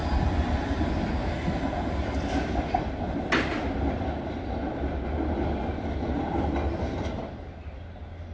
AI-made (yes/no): no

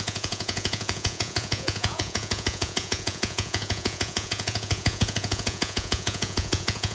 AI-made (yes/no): yes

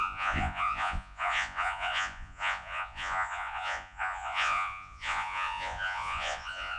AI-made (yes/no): yes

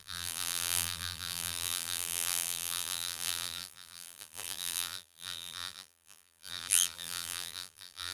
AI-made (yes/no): yes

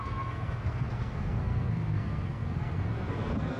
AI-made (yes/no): yes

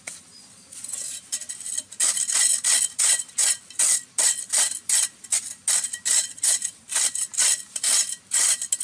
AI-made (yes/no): no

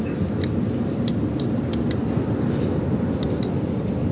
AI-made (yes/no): no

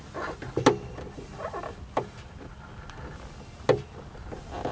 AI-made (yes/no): no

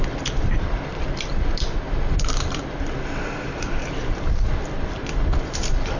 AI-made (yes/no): yes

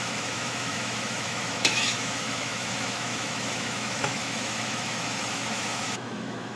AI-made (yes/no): yes